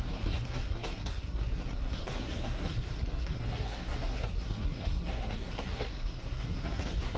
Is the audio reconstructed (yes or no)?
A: yes